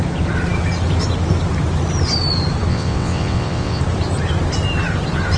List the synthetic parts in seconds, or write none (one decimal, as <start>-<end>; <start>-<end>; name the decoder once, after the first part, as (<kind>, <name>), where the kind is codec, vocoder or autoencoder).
2.7-3.8 (vocoder, WaveNeXt)